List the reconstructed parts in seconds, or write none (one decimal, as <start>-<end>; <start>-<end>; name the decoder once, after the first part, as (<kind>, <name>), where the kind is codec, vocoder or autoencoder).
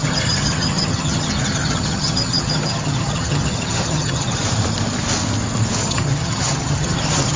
0.0-4.4 (vocoder, HiFi-GAN); 5.8-7.4